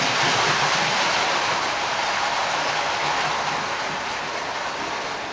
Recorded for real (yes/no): yes